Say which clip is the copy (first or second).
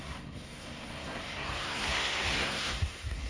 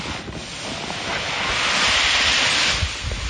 first